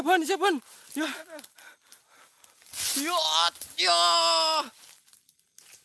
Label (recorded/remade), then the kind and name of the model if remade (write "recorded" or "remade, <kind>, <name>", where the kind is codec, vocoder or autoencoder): recorded